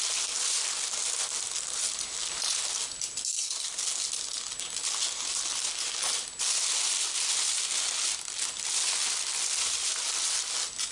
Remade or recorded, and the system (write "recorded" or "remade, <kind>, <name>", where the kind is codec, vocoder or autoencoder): recorded